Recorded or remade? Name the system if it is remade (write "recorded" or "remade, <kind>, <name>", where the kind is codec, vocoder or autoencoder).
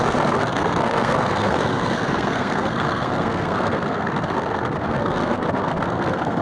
remade, codec, SNAC